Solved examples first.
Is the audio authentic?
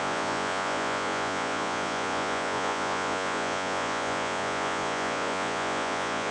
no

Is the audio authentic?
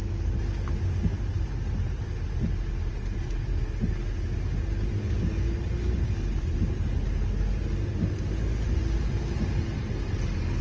yes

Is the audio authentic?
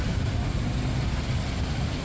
yes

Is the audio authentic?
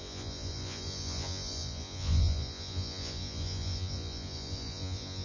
no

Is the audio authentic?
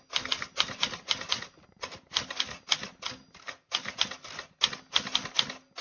yes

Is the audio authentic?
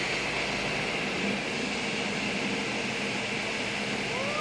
yes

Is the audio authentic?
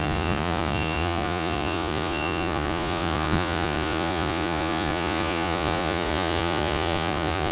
no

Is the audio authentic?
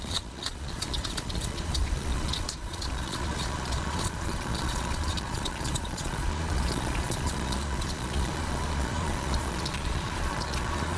no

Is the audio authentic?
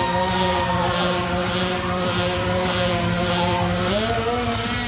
yes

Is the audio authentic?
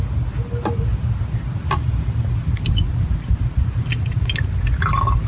yes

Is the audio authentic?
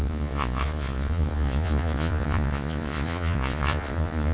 no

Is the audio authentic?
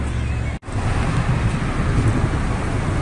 yes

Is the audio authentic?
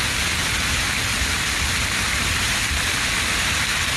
yes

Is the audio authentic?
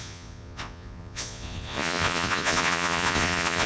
no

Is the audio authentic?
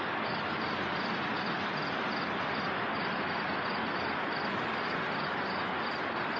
yes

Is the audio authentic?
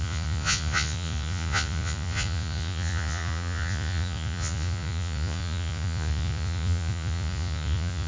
no